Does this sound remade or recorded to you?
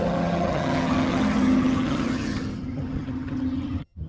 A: remade